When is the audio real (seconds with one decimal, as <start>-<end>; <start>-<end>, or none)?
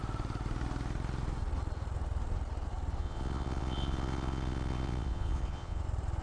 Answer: 0.0-3.0; 5.8-6.2